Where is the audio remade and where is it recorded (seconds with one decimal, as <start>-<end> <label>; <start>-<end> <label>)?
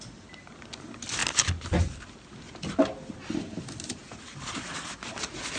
0.0-5.6 recorded